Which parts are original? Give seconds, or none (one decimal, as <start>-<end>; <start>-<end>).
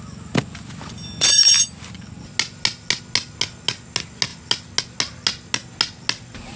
0.0-6.6